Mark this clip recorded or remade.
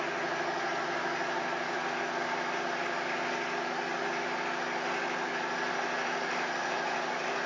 recorded